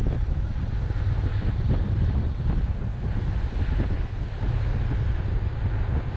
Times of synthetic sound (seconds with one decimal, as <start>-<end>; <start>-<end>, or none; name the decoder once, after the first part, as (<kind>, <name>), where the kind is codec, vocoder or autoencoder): 1.3-1.9 (vocoder, BigVGAN v2)